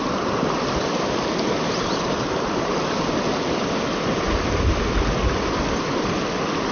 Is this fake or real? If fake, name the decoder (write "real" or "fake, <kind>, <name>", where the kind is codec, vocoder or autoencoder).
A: real